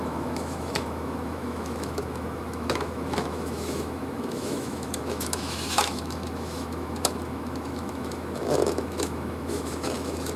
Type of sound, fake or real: fake